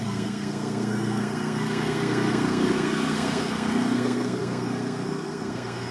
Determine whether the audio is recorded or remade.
remade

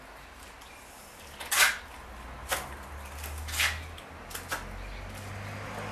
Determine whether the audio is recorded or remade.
recorded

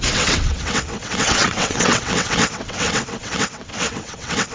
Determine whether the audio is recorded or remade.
remade